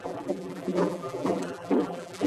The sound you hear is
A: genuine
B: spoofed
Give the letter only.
B